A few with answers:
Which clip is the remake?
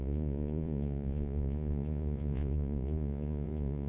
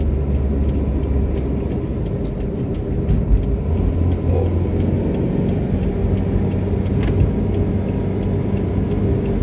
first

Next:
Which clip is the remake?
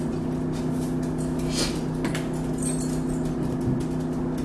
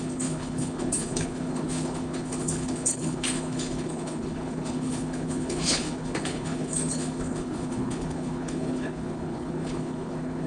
second